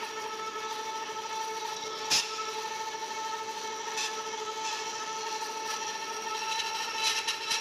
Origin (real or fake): real